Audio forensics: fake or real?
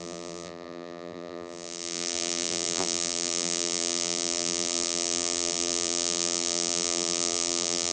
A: fake